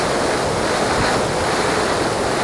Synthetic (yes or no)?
no